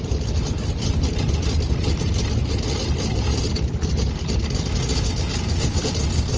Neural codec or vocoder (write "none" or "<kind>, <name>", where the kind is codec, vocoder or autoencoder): none